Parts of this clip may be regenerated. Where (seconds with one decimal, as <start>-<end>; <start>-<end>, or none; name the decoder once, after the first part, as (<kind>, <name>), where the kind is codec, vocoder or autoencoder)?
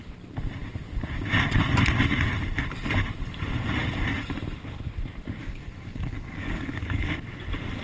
5.4-7.1 (codec, DAC)